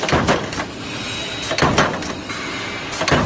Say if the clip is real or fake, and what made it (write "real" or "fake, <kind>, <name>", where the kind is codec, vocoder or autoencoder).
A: real